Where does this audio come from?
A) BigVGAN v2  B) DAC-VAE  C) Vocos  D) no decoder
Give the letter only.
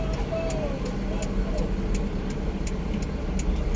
D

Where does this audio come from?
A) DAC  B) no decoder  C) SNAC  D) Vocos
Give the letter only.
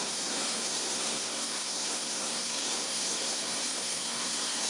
C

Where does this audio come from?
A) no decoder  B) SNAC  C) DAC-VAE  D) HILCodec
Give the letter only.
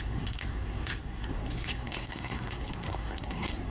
B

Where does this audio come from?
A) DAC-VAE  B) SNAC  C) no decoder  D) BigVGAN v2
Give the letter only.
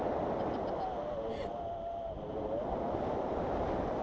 C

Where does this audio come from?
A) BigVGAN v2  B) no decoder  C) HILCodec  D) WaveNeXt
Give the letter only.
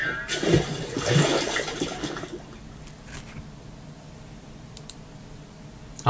B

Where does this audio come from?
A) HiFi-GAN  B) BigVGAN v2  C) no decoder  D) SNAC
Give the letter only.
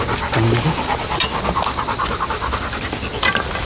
C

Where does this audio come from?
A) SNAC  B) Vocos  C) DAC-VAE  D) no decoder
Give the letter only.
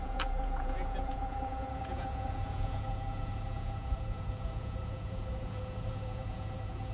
B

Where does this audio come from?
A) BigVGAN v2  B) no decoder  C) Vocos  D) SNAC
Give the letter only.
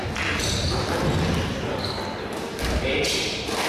B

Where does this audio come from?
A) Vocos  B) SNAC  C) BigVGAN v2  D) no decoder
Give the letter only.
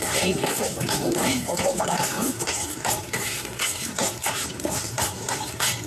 B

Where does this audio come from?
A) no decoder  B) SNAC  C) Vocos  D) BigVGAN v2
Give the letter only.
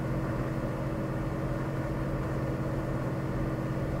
A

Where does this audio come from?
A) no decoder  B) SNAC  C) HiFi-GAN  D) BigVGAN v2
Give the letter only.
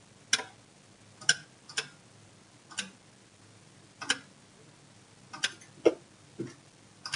A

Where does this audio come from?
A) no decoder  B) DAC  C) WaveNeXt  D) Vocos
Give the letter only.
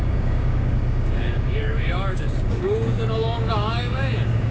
B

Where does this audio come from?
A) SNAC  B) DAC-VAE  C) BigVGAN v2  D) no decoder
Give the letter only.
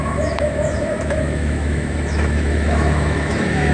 B